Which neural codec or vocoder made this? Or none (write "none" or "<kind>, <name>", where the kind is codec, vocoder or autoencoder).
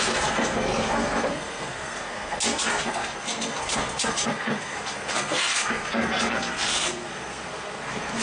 codec, SNAC